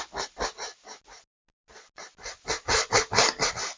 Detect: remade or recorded recorded